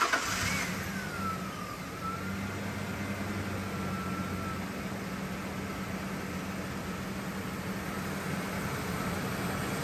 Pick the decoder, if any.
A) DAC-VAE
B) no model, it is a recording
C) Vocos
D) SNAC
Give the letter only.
B